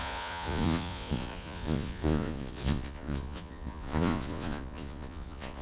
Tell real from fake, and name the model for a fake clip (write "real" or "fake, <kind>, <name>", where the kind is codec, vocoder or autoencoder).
fake, vocoder, Vocos